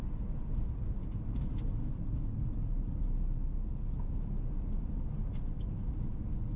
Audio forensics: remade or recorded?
recorded